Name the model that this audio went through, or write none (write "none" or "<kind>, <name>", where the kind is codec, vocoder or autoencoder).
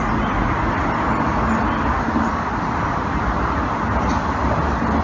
none